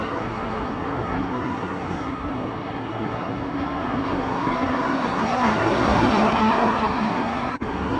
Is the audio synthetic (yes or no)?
yes